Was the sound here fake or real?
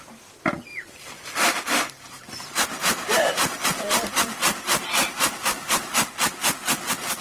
fake